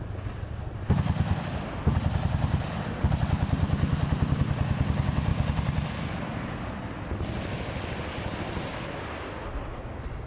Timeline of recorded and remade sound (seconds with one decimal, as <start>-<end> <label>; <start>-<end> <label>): 0.0-10.3 recorded